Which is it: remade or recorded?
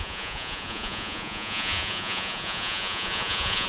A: remade